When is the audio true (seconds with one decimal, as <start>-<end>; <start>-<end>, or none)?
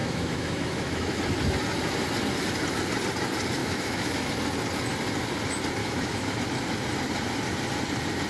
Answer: 1.2-3.6; 4.3-5.8; 6.4-8.3